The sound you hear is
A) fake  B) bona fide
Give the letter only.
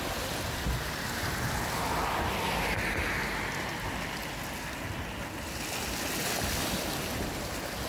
B